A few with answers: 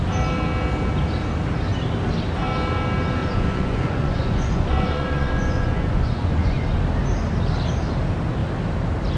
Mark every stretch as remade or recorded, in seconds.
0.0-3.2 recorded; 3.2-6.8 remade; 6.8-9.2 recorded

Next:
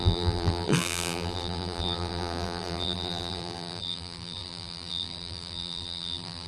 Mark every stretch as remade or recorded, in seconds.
0.0-6.5 remade

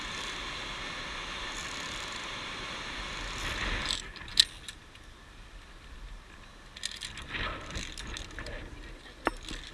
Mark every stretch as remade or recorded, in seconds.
0.0-9.7 recorded

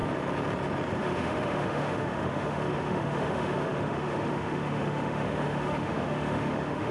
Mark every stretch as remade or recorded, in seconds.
0.0-1.0 recorded; 1.0-6.9 remade

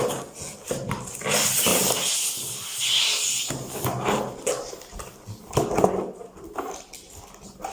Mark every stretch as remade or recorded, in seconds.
0.0-7.7 recorded

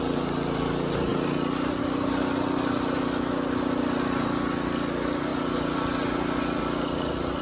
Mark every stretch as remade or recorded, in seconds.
0.0-7.4 recorded